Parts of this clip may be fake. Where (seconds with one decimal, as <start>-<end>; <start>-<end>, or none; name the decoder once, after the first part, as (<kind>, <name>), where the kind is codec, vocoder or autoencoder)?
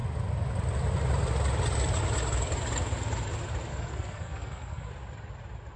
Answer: 3.7-4.9 (codec, SNAC)